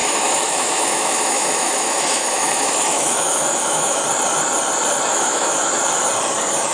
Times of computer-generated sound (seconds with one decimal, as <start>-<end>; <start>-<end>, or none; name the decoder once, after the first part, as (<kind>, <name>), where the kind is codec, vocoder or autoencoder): 0.0-4.0 (autoencoder, DAC-VAE); 5.1-5.7

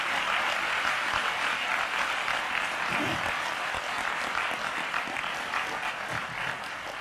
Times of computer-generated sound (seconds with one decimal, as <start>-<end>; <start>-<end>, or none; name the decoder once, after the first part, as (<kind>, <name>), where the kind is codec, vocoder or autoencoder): none

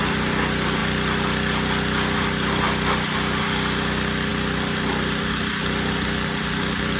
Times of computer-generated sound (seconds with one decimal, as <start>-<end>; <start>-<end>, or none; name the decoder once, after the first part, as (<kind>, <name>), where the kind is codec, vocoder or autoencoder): none